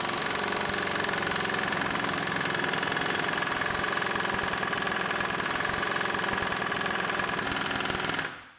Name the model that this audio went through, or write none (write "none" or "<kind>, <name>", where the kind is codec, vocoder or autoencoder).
none